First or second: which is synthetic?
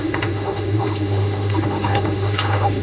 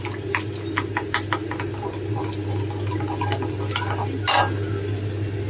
first